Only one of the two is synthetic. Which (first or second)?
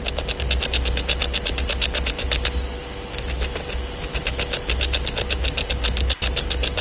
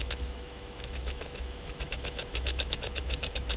second